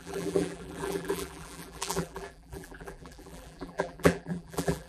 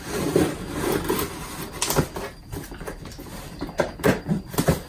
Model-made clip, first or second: first